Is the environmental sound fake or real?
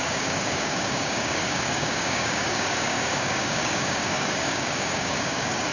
fake